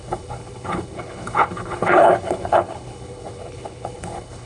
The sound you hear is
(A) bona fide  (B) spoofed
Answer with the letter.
B